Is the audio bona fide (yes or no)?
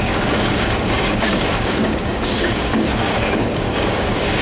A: no